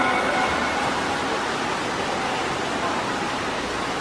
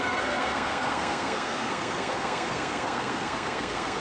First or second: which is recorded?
first